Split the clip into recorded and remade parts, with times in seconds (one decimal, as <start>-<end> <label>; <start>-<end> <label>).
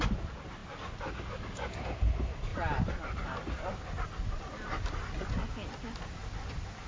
0.0-6.9 recorded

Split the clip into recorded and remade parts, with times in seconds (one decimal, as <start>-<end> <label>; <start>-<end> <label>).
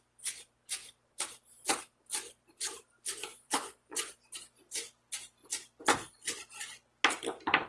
0.0-3.3 recorded; 3.3-4.1 remade; 4.1-7.7 recorded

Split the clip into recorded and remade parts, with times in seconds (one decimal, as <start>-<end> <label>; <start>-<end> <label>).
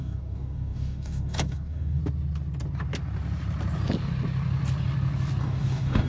0.0-2.0 remade; 2.0-5.4 recorded; 5.4-6.1 remade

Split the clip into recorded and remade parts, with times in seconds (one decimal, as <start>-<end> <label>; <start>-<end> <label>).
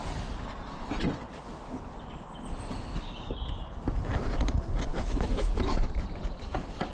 0.0-4.9 recorded; 4.9-5.9 remade; 5.9-6.9 recorded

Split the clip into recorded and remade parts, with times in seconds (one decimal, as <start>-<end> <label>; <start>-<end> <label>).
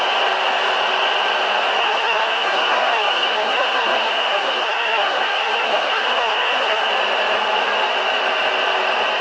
0.0-1.8 recorded; 1.8-6.9 remade; 6.9-9.2 recorded